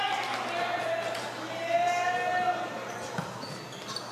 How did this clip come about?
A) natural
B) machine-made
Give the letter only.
A